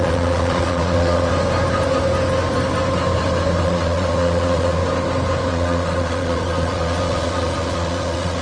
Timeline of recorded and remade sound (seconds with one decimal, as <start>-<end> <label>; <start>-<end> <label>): 0.0-1.3 remade; 1.3-3.6 recorded; 3.6-4.8 remade; 4.8-5.5 recorded; 5.5-8.4 remade